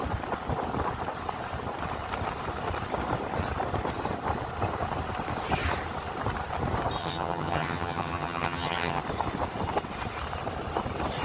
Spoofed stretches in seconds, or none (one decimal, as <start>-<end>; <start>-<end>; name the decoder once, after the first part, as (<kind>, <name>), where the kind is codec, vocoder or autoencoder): 7.0-9.0 (vocoder, HiFi-GAN)

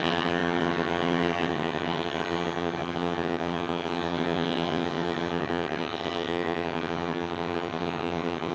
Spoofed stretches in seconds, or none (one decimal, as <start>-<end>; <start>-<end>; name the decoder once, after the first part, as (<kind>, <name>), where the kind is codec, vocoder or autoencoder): 0.0-8.5 (vocoder, HiFi-GAN)